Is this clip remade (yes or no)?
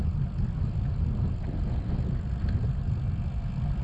no